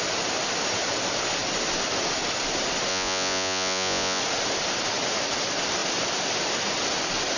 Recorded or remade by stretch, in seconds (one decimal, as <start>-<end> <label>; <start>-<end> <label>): 0.0-2.9 recorded; 2.9-4.2 remade; 4.2-7.4 recorded